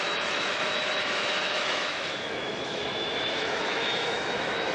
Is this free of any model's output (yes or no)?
no